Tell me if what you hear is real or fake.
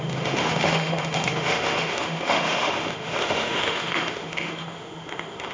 fake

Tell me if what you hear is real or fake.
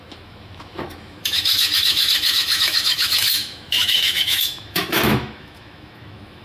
fake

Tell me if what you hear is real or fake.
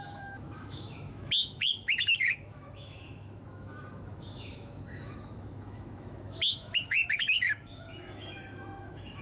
fake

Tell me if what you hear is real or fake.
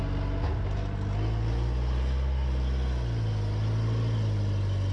real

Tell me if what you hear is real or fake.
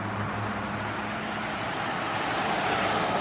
real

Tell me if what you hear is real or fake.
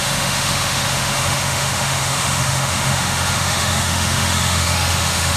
fake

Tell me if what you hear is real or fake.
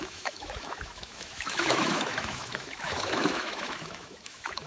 fake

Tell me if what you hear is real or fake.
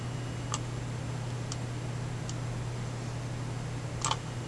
real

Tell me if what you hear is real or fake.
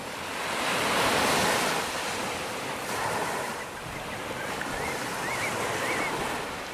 real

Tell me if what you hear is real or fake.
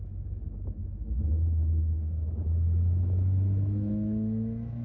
fake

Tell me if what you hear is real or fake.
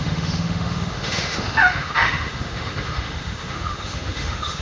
fake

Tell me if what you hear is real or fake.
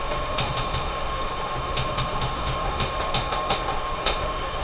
fake